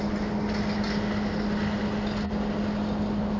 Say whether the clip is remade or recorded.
recorded